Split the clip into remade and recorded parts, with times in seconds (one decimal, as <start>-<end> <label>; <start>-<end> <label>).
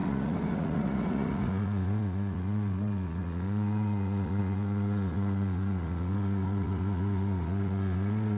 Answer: 0.0-8.4 remade